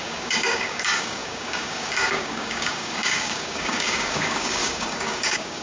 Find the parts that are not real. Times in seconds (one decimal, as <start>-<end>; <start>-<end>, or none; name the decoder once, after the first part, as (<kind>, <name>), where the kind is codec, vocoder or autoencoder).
0.0-5.6 (codec, DAC)